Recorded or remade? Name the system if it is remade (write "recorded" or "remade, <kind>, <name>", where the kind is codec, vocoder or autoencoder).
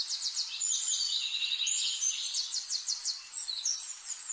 remade, vocoder, Vocos